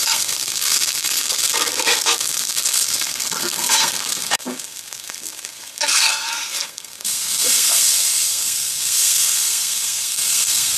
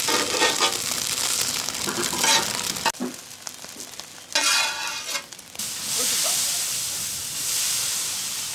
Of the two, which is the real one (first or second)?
second